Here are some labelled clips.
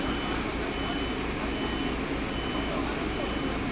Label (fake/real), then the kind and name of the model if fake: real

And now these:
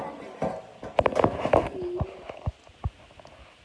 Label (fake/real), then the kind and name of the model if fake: real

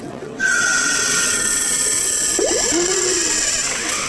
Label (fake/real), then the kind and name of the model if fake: fake, vocoder, WaveNeXt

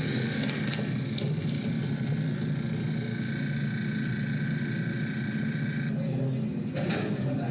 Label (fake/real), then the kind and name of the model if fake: real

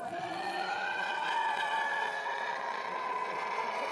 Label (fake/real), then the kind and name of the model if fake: fake, vocoder, WaveNeXt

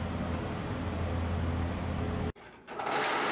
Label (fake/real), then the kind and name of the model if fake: real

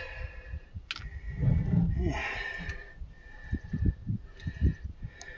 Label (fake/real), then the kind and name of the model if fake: real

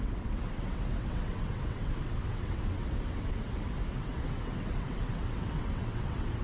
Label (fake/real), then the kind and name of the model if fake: fake, vocoder, WaveNeXt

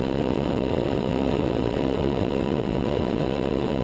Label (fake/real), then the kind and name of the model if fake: fake, vocoder, WaveNeXt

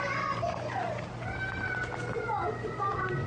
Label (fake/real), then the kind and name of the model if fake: real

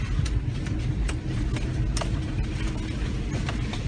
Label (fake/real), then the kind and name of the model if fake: real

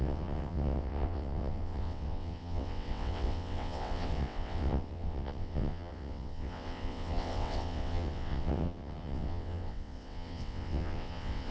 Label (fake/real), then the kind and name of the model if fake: fake, vocoder, WaveNeXt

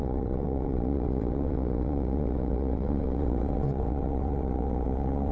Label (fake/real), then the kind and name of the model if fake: fake, vocoder, WaveNeXt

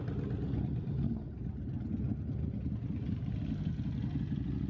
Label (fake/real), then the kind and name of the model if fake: real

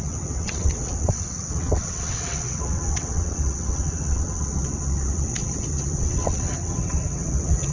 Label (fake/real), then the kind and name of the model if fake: fake, vocoder, WaveNeXt